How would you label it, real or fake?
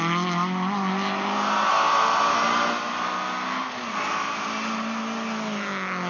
real